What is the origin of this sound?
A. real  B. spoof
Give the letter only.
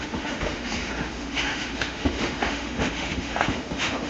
B